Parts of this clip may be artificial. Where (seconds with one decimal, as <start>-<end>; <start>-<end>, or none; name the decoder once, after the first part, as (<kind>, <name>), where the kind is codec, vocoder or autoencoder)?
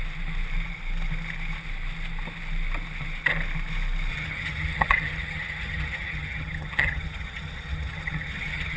4.1-8.8 (vocoder, HiFi-GAN)